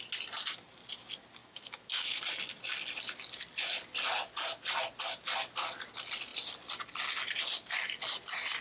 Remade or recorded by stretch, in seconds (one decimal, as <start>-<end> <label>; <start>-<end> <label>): 0.0-1.4 recorded; 1.4-2.2 remade; 2.2-8.6 recorded